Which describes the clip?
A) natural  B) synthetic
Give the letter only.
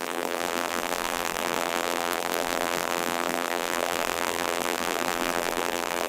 B